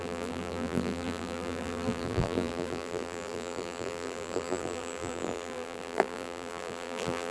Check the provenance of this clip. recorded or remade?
remade